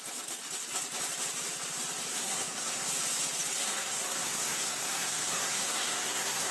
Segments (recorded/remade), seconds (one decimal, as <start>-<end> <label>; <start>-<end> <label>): 0.0-2.1 recorded; 2.1-2.9 remade; 2.9-3.6 recorded; 3.6-6.5 remade